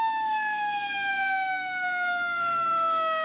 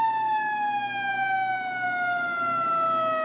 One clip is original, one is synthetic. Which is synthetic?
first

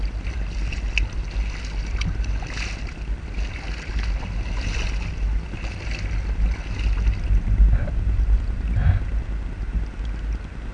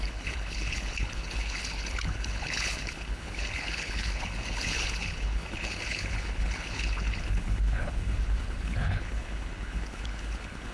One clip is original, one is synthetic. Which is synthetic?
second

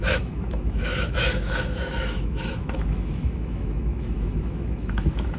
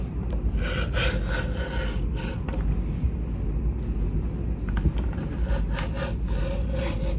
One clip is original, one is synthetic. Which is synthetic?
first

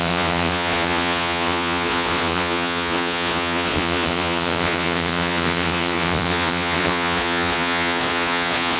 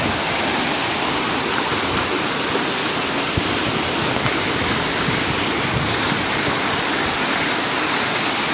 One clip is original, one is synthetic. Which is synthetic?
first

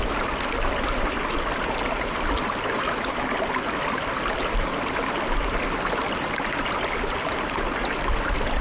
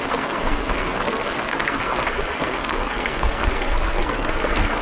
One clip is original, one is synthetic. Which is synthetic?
second